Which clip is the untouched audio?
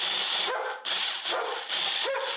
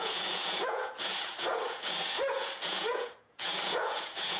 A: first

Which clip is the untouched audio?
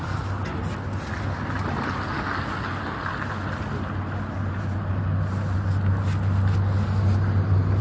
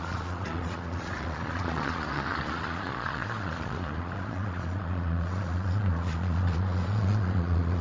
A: first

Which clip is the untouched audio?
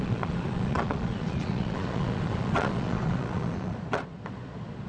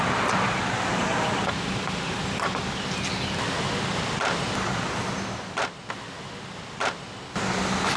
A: second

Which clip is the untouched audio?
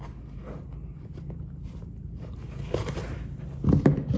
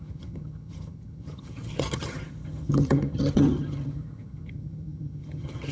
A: first